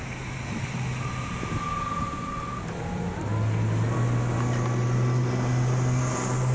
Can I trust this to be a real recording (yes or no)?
yes